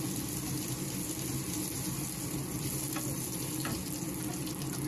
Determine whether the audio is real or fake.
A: real